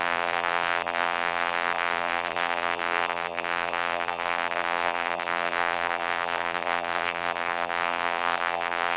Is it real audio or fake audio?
fake